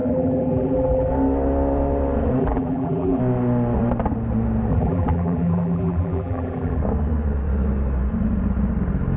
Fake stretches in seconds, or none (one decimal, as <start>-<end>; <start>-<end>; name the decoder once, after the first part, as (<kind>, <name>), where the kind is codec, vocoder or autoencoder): 0.0-1.1 (vocoder, BigVGAN v2); 2.4-3.2; 4.7-6.8